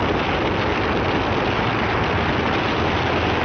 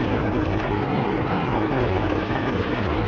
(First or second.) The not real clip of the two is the second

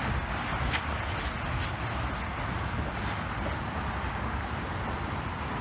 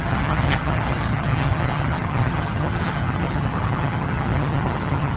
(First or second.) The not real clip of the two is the second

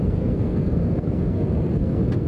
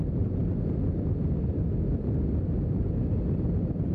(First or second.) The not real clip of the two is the first